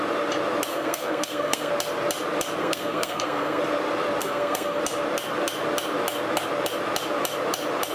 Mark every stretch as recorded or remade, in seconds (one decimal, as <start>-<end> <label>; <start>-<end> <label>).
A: 0.0-0.7 recorded; 0.7-1.7 remade; 1.7-2.6 recorded; 2.6-3.6 remade; 3.6-4.2 recorded; 4.2-4.8 remade; 4.8-7.9 recorded